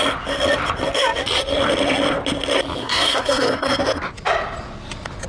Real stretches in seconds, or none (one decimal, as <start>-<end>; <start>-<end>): 0.0-2.8; 3.8-5.3